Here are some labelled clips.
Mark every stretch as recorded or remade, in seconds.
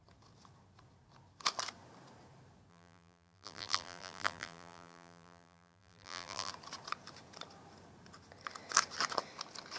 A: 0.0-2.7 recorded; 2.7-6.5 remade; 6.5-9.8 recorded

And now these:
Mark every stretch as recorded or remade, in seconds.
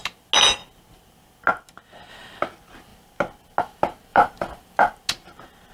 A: 0.0-4.1 recorded; 4.1-4.8 remade; 4.8-5.7 recorded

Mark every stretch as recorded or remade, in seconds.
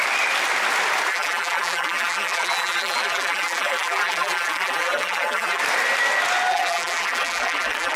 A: 0.0-1.1 recorded; 1.1-5.6 remade; 5.6-6.5 recorded; 6.5-8.0 remade